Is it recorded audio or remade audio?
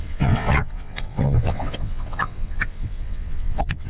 remade